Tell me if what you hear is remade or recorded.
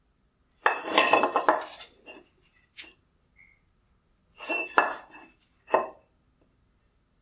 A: recorded